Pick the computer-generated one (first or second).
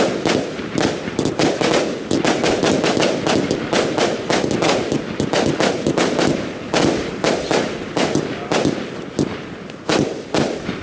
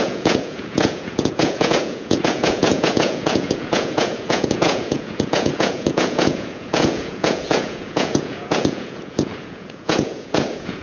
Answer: second